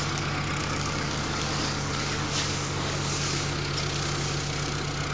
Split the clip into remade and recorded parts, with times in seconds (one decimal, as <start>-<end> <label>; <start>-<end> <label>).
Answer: 0.0-0.6 recorded; 0.6-3.7 remade; 3.7-5.1 recorded